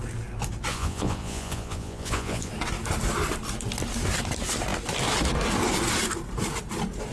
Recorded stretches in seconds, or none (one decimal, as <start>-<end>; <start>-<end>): 0.0-0.7; 2.5-7.1